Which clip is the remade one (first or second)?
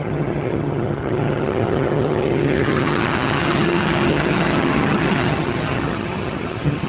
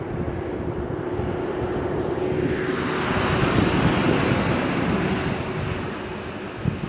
first